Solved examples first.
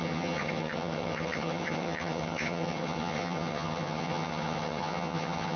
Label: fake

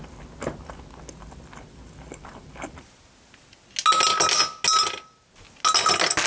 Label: real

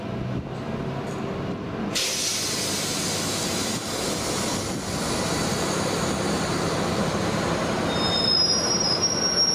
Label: real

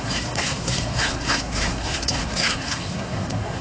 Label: fake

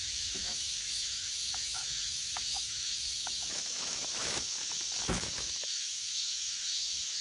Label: fake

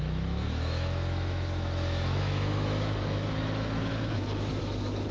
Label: fake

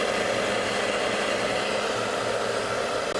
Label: real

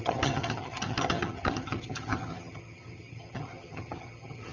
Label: fake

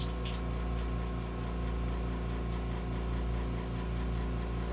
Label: real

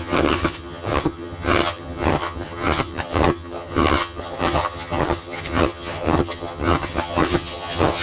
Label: fake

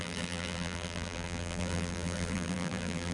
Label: fake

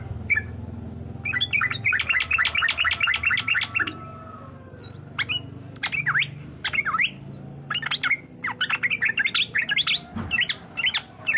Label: real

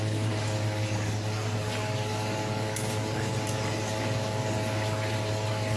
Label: fake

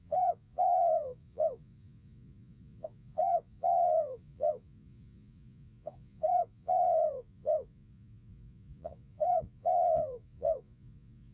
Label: fake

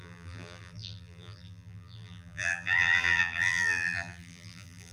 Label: fake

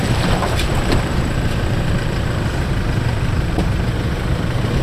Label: fake